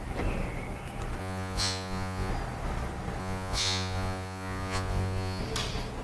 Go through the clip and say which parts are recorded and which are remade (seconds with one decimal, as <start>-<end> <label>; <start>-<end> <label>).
0.0-1.2 recorded; 1.2-2.3 remade; 2.3-3.2 recorded; 3.2-5.4 remade; 5.4-6.0 recorded